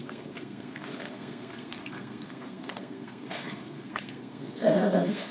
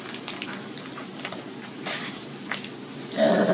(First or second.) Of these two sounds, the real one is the second